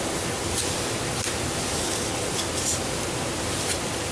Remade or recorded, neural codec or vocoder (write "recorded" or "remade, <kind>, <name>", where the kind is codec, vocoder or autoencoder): recorded